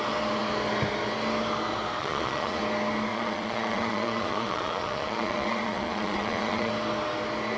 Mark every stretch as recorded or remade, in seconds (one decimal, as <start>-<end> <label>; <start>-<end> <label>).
0.0-2.0 recorded; 2.0-2.6 remade; 2.6-3.1 recorded; 3.1-6.7 remade; 6.7-7.6 recorded